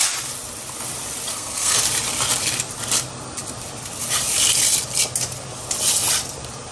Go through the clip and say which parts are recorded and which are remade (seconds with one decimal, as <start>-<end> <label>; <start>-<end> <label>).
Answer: 0.0-1.3 recorded; 1.3-1.8 remade; 1.8-6.7 recorded